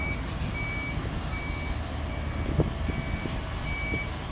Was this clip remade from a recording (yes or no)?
no